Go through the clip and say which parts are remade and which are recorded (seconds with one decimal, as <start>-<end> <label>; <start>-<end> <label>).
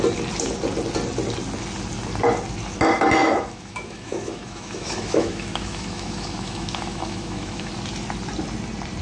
0.0-3.2 recorded; 3.2-7.7 remade; 7.7-9.0 recorded